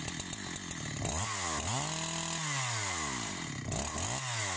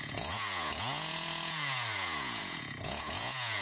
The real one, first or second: first